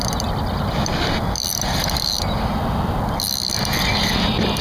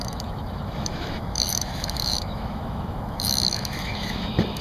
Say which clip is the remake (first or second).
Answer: second